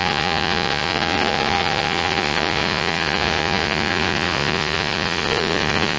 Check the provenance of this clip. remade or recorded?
remade